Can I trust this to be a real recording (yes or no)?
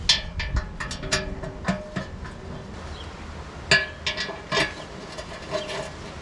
yes